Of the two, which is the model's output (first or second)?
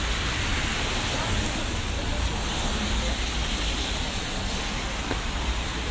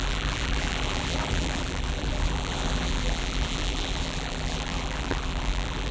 second